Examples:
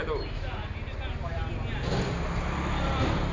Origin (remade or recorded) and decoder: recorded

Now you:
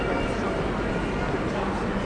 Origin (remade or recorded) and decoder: recorded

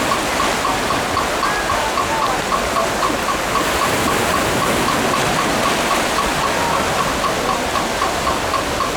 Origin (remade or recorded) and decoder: recorded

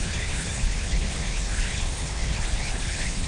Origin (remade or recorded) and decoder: remade, codec, HILCodec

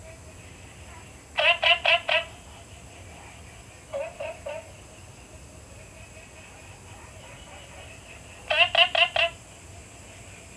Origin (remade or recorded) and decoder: recorded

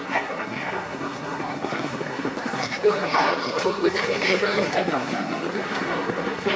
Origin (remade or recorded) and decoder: remade, codec, SNAC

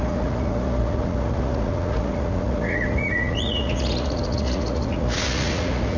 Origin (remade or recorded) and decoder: remade, vocoder, Vocos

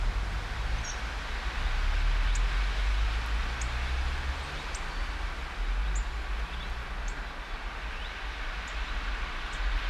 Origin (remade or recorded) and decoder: recorded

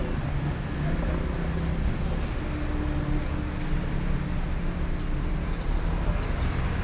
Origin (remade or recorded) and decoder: recorded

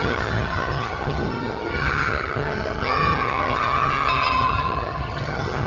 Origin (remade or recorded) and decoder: remade, vocoder, HiFi-GAN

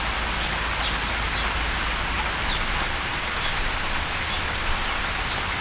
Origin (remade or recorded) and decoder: recorded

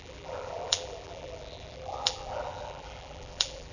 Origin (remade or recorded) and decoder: remade, vocoder, BigVGAN v2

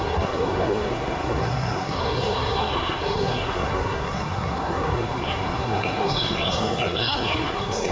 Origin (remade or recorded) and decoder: remade, codec, SNAC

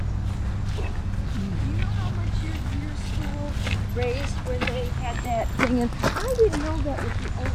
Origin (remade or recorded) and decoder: recorded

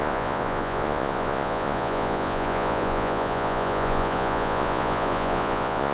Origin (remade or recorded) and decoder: remade, vocoder, Vocos